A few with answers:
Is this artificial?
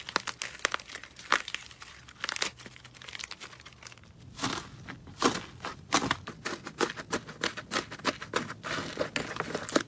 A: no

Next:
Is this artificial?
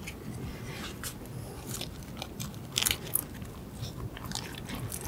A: no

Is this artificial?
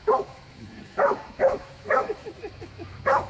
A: yes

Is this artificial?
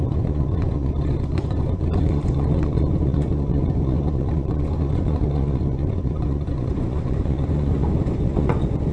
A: yes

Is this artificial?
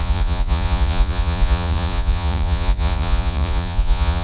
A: yes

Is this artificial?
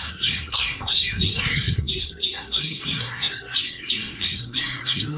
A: yes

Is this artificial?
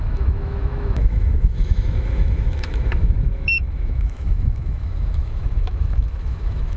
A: yes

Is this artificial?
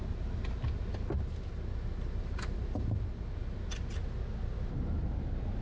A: no